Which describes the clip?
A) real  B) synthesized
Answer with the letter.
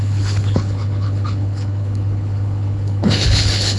B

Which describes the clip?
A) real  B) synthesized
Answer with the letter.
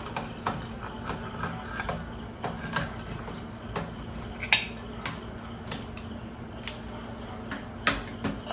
A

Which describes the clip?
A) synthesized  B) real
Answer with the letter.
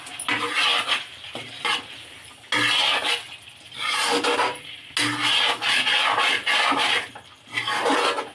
B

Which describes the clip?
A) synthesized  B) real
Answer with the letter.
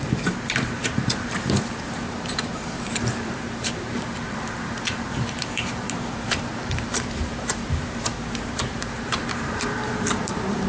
A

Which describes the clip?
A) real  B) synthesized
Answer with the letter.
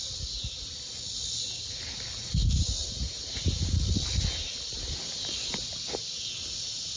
A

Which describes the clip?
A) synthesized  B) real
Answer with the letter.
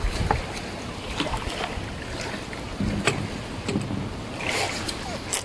B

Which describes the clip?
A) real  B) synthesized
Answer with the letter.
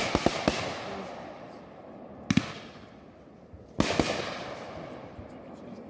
A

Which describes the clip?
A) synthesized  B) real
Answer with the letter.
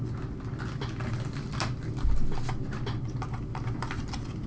B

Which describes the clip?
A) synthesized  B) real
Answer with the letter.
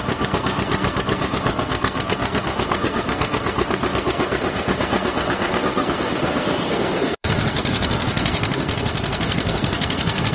A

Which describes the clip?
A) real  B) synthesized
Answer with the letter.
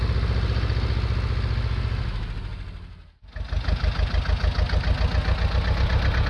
A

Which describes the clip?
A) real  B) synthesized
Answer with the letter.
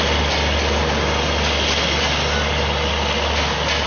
A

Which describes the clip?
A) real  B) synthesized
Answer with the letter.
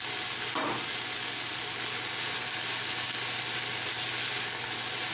A